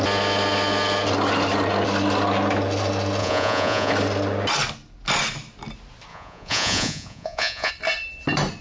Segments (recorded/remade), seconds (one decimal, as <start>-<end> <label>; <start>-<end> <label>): 0.0-3.2 recorded; 3.2-3.9 remade; 3.9-6.1 recorded; 6.1-7.7 remade; 7.7-8.6 recorded